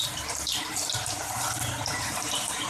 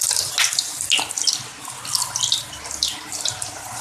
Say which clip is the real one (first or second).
second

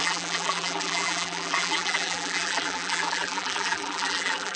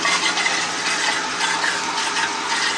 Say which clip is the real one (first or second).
second